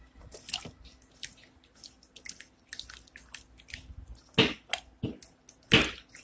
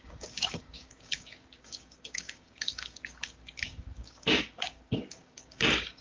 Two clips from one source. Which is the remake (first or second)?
second